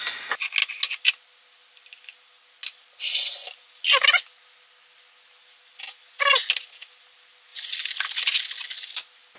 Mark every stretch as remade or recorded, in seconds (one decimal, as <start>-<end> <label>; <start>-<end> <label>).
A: 0.0-9.4 recorded